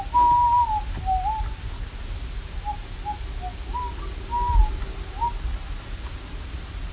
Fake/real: real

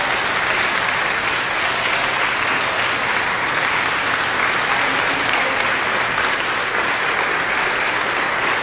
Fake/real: real